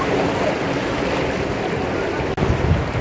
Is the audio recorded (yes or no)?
yes